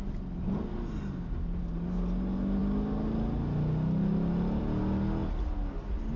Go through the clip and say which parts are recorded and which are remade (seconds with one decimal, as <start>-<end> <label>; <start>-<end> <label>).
0.0-6.2 recorded